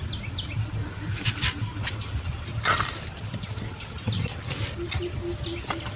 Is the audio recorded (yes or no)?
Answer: yes